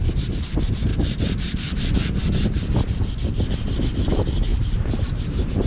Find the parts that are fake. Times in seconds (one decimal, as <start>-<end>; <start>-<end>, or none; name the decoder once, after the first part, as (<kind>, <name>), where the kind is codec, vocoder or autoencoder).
4.5-5.7 (vocoder, BigVGAN v2)